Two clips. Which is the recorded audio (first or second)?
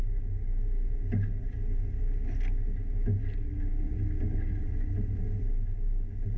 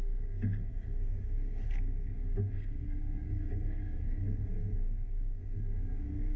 first